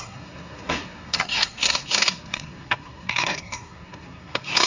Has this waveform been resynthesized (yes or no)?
yes